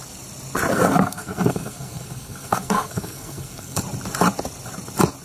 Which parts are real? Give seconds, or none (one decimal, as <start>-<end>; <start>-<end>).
0.0-0.7; 3.8-5.2